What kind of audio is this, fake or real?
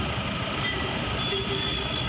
real